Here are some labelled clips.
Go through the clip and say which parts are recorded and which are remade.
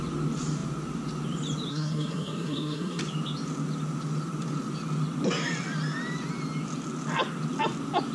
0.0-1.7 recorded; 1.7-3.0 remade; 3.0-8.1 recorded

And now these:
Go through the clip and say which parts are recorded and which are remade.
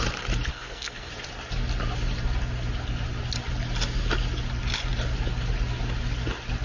0.0-0.5 recorded; 0.5-1.1 remade; 1.1-6.6 recorded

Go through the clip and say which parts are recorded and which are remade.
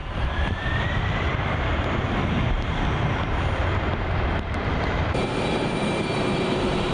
0.0-1.3 remade; 1.3-3.6 recorded; 3.6-6.9 remade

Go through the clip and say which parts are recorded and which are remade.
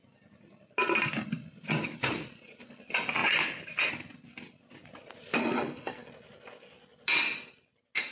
0.0-5.4 recorded; 5.4-6.1 remade; 6.1-8.1 recorded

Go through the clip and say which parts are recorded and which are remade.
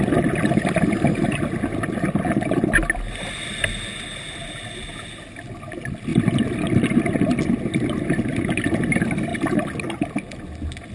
0.0-10.9 recorded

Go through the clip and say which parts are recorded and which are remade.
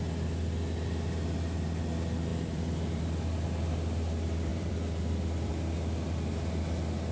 0.0-2.3 recorded; 2.3-3.0 remade; 3.0-4.5 recorded; 4.5-5.5 remade; 5.5-7.1 recorded